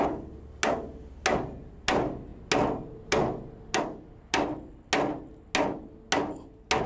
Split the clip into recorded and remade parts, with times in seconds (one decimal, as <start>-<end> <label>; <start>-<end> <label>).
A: 0.0-6.9 recorded